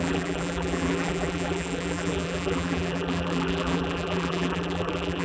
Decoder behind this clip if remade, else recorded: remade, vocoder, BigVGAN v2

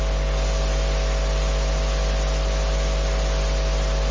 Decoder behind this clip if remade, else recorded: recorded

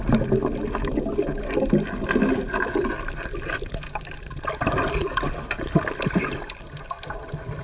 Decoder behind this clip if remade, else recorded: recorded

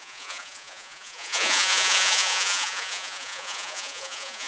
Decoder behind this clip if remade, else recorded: remade, vocoder, Vocos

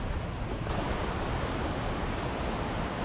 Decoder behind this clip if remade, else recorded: remade, vocoder, BigVGAN v2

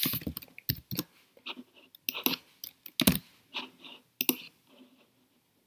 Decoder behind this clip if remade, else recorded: recorded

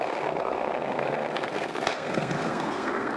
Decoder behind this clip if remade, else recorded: remade, codec, SNAC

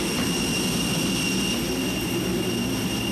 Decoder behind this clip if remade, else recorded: recorded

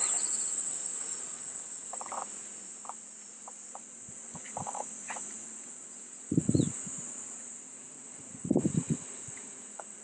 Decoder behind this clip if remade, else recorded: remade, vocoder, Vocos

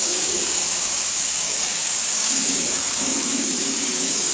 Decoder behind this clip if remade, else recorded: remade, codec, DAC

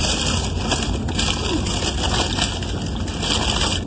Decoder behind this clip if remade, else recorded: recorded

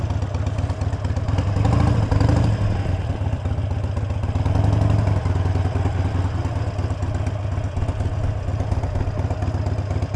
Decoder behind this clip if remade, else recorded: recorded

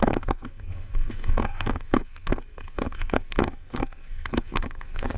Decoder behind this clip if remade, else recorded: remade, codec, SNAC